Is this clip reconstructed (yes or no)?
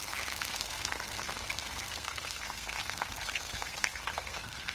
yes